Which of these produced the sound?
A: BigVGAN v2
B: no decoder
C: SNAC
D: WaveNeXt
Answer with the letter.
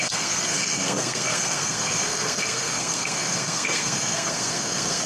C